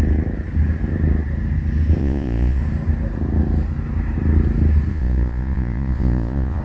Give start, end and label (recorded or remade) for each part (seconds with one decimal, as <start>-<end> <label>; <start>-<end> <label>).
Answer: 0.0-2.0 recorded; 2.0-2.6 remade; 2.6-4.9 recorded; 4.9-6.6 remade